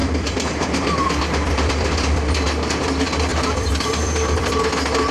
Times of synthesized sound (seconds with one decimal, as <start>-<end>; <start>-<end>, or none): 0.0-1.7; 3.3-4.6